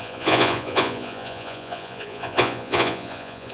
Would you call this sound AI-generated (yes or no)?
yes